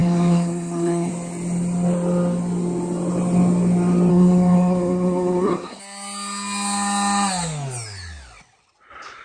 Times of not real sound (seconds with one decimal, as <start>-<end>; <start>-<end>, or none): 0.0-1.1; 4.1-5.8